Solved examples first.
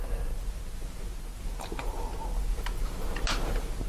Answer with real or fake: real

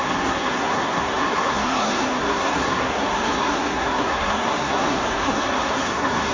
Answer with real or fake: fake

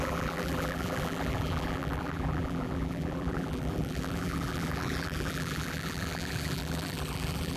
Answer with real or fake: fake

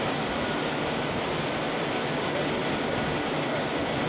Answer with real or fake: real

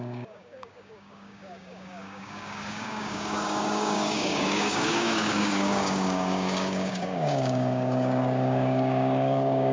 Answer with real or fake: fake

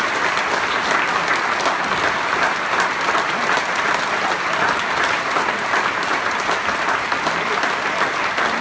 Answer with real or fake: real